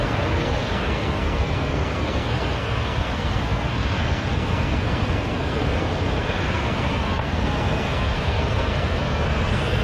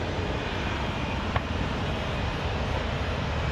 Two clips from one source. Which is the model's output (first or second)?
first